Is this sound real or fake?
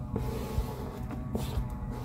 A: real